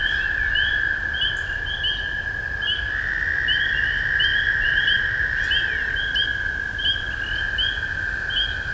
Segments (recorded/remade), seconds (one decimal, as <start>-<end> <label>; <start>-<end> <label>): 0.0-8.7 recorded